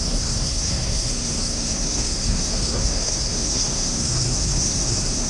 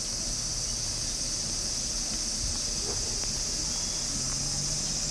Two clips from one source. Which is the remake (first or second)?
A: first